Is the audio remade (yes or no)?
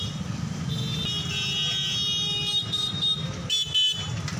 no